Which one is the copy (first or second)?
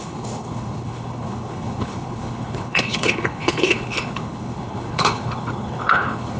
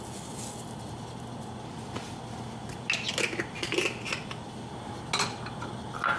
first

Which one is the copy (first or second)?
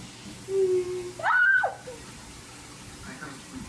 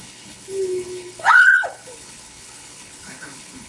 second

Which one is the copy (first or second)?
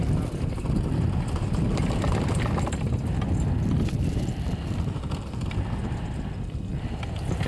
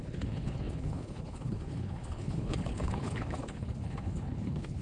second